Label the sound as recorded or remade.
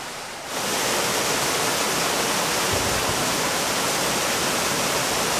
recorded